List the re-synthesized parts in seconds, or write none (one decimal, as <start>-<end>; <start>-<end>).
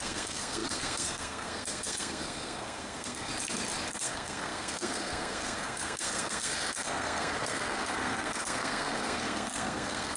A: 0.0-3.3; 3.9-10.2